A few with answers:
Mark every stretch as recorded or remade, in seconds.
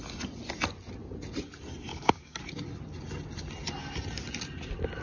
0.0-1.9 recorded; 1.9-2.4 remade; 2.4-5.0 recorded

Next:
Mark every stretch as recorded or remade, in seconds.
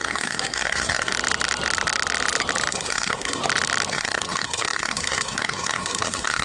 0.0-1.1 remade; 1.1-2.7 recorded; 2.7-3.4 remade; 3.4-3.9 recorded; 3.9-6.4 remade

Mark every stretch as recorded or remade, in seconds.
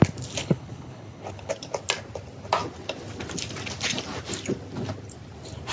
0.0-0.4 recorded; 0.4-1.5 remade; 1.5-5.7 recorded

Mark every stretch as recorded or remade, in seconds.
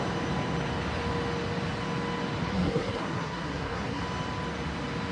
0.0-2.5 recorded; 2.5-4.0 remade; 4.0-5.1 recorded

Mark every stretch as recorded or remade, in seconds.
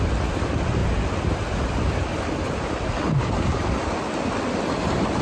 0.0-5.2 recorded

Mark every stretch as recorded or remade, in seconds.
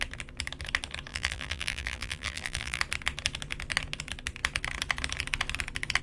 0.0-1.1 recorded; 1.1-2.8 remade; 2.8-6.0 recorded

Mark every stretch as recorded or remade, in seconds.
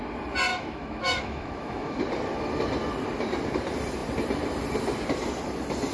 0.0-0.5 recorded; 0.5-2.0 remade; 2.0-5.9 recorded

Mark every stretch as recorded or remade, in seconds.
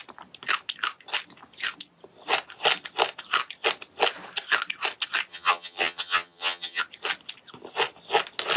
0.0-5.3 recorded; 5.3-6.8 remade; 6.8-8.6 recorded